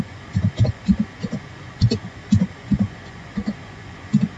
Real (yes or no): no